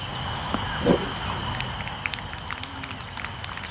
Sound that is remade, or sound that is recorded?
recorded